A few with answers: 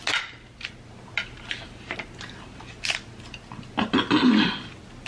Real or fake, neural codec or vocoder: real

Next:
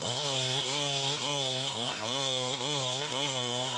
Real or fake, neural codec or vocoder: fake, codec, SNAC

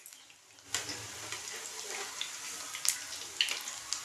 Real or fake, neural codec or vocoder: real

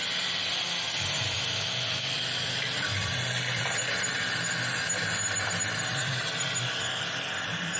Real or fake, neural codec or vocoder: fake, vocoder, BigVGAN v2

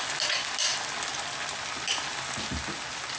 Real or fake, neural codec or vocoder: real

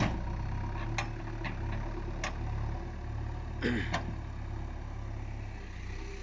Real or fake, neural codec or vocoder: real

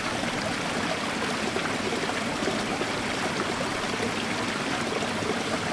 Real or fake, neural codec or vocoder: real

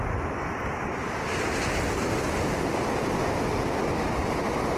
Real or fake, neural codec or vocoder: real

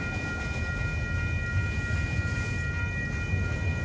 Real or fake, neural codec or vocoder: real